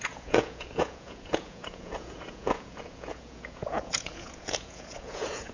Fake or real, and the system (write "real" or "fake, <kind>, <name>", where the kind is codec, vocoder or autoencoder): fake, vocoder, Vocos